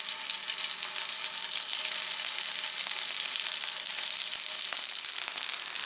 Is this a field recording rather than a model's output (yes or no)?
yes